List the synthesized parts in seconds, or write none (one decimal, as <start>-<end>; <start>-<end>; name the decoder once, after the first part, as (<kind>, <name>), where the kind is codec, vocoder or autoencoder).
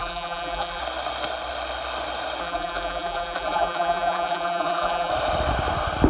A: 0.0-0.8 (vocoder, BigVGAN v2); 2.4-5.1